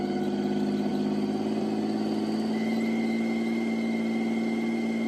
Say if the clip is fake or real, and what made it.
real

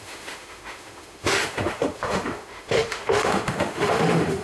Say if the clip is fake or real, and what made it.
fake, autoencoder, DAC-VAE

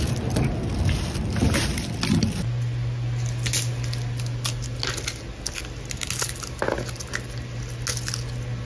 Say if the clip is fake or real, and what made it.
real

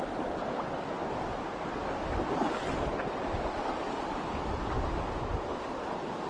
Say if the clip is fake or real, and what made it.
real